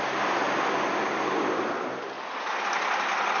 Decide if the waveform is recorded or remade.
recorded